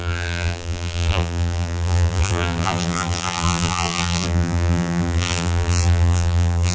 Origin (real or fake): fake